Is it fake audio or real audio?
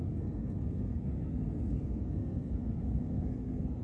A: fake